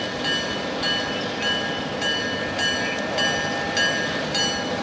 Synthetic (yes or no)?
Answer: no